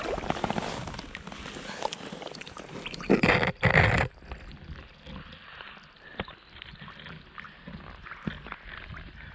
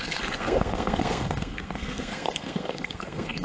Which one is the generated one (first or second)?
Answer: second